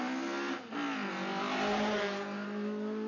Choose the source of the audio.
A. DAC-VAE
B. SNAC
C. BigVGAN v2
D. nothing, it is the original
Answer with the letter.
D